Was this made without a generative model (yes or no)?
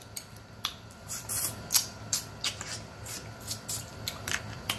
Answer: no